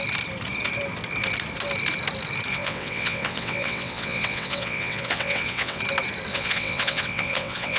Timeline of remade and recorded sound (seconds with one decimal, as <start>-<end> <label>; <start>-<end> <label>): 0.0-2.5 recorded; 2.5-5.8 remade; 5.8-6.3 recorded; 6.3-7.8 remade